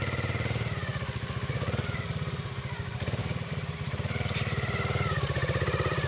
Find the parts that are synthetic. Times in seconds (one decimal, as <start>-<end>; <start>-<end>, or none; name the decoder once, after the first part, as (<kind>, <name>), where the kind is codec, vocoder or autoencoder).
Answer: 3.2-6.1 (vocoder, BigVGAN v2)